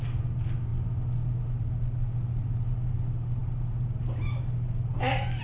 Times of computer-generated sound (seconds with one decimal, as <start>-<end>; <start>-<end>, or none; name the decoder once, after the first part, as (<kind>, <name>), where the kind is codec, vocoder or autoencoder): none